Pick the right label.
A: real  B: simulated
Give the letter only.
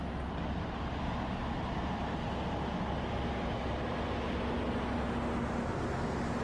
A